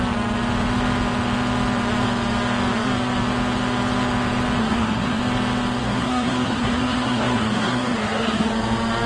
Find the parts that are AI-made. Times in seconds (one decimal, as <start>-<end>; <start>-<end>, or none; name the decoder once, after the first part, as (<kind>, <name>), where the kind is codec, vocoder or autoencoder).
4.6-5.2 (codec, SNAC); 5.8-8.5

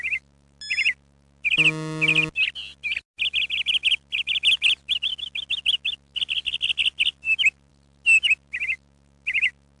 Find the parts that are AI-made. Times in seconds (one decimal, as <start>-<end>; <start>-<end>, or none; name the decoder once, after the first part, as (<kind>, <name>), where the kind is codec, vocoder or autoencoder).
none

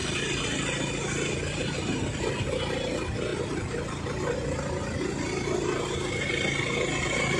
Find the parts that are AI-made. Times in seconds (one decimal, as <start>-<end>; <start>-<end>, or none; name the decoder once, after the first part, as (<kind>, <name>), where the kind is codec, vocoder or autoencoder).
none

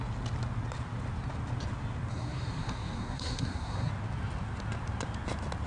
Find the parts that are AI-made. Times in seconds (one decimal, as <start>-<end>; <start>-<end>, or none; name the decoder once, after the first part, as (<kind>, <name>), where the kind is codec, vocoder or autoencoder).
2.1-3.9 (codec, SNAC)

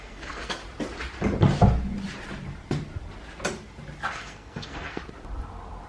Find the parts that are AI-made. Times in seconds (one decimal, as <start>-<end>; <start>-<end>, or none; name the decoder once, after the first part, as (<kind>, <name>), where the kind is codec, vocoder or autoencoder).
0.0-0.6 (codec, SNAC); 4.1-5.0

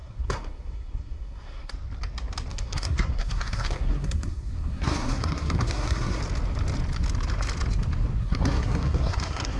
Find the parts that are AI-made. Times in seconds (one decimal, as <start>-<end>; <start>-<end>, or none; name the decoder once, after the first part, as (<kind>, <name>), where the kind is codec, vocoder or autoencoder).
0.0-1.7 (codec, SNAC); 2.5-6.2; 8.2-9.6

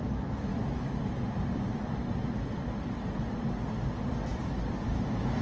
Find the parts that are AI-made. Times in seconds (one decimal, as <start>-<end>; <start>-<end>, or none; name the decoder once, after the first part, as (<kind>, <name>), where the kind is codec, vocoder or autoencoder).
none

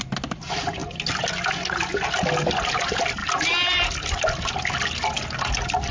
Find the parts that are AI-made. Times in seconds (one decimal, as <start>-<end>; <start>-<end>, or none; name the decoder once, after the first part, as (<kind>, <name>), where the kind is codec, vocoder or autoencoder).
none